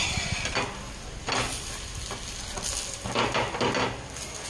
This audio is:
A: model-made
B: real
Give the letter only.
B